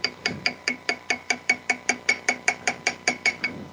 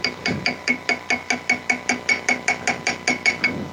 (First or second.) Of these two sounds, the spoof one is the first